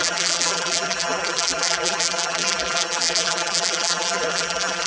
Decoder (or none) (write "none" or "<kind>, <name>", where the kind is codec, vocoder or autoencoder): vocoder, BigVGAN v2